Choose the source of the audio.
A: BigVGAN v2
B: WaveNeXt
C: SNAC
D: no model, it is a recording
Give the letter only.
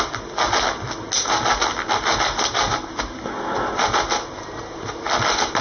D